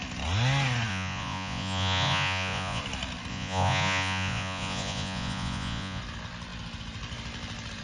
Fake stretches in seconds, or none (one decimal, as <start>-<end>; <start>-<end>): 0.9-2.8; 3.3-6.0